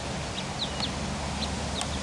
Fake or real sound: real